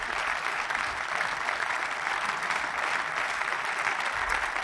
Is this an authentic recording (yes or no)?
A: yes